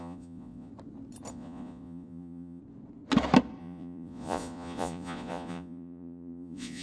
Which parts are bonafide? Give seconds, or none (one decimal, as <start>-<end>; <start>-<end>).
0.7-1.3; 2.6-3.6